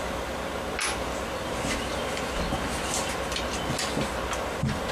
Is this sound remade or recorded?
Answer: recorded